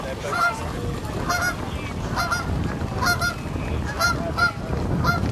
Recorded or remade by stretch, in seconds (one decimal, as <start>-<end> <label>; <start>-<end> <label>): 0.0-5.3 recorded